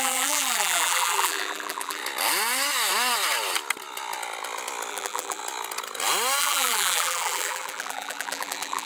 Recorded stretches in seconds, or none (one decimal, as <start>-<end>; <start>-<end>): 2.0-4.9; 5.4-6.4

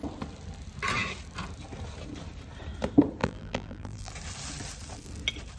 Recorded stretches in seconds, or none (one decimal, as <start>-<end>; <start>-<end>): 0.0-3.2; 4.1-5.6

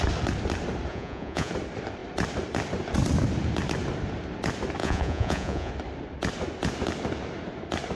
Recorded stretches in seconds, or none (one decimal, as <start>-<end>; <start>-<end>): 0.0-0.9; 1.5-4.8; 5.7-8.0

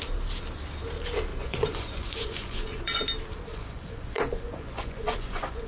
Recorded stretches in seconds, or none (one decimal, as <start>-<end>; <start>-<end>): 0.0-1.3; 3.0-3.5